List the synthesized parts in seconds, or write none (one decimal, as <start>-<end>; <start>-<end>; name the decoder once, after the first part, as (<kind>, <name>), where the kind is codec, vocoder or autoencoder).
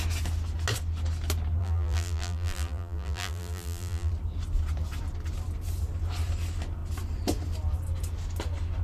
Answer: 1.6-4.1 (vocoder, BigVGAN v2)